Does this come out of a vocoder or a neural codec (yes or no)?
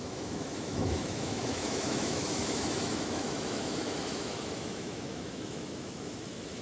yes